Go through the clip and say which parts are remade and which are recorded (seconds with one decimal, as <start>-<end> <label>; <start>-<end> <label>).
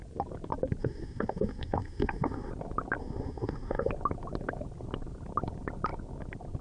0.0-0.8 recorded; 0.8-2.5 remade; 2.5-3.0 recorded; 3.0-3.9 remade; 3.9-6.6 recorded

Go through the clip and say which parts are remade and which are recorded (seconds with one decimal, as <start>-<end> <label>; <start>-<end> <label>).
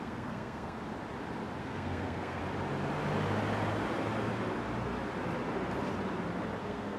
0.0-0.8 remade; 0.8-1.6 recorded; 1.6-2.4 remade; 2.4-6.6 recorded; 6.6-7.0 remade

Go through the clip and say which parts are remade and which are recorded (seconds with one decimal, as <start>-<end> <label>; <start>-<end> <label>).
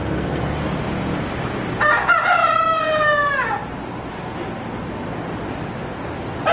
0.0-0.5 remade; 0.5-6.5 recorded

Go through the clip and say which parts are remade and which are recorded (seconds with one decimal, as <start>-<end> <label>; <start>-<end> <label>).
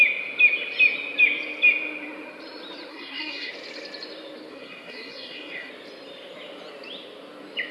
0.0-2.9 recorded; 2.9-3.5 remade; 3.5-4.5 recorded; 4.5-5.7 remade; 5.7-7.7 recorded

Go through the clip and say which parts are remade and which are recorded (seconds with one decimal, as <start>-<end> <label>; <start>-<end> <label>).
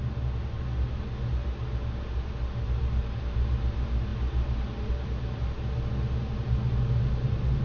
0.0-7.6 recorded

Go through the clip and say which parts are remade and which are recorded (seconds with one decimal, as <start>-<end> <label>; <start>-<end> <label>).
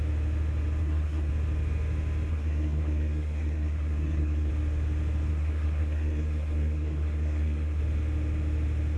0.0-0.8 recorded; 0.8-1.3 remade; 1.3-2.3 recorded; 2.3-4.5 remade; 4.5-5.3 recorded; 5.3-7.8 remade; 7.8-9.0 recorded